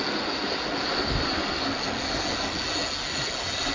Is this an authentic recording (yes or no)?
yes